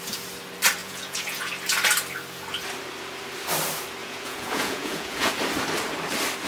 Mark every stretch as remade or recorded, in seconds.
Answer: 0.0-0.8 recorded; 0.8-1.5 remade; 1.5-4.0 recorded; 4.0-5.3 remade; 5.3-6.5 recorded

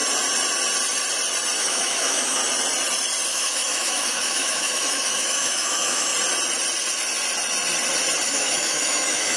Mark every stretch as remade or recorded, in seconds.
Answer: 0.0-1.6 recorded; 1.6-2.4 remade; 2.4-3.3 recorded; 3.3-6.1 remade; 6.1-8.3 recorded; 8.3-9.4 remade